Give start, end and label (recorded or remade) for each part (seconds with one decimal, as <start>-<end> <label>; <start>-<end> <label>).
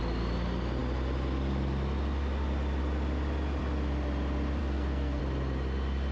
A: 0.0-4.6 recorded; 4.6-5.2 remade; 5.2-6.1 recorded